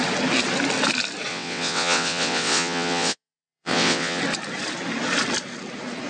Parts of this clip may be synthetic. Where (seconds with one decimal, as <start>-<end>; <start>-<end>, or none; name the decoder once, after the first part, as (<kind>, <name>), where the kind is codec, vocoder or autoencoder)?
1.3-4.2 (vocoder, WaveNeXt)